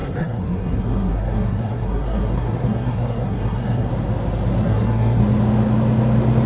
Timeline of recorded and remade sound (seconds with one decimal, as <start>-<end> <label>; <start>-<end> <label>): 0.0-3.9 remade; 3.9-4.6 recorded; 4.6-5.2 remade; 5.2-6.5 recorded

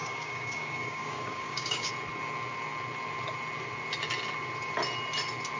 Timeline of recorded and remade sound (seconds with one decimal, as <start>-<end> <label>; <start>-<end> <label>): 0.0-1.9 remade; 1.9-5.6 recorded

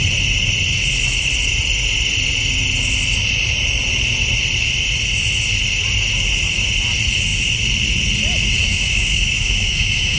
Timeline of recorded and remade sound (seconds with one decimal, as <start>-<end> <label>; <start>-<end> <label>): 0.0-8.6 recorded; 8.6-10.2 remade

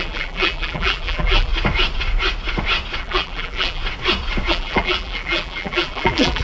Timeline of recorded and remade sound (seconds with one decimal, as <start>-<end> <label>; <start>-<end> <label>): 0.0-1.5 remade; 1.5-3.0 recorded; 3.0-3.8 remade; 3.8-4.5 recorded; 4.5-6.4 remade

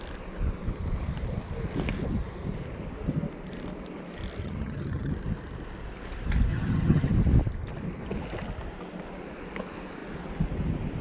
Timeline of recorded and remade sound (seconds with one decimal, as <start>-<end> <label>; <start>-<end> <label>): 0.0-4.4 recorded; 4.4-5.1 remade; 5.1-6.5 recorded; 6.5-7.1 remade; 7.1-11.0 recorded

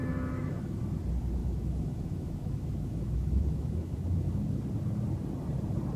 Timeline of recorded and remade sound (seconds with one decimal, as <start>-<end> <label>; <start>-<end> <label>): 0.0-0.8 remade; 0.8-1.4 recorded; 1.4-4.6 remade; 4.6-6.0 recorded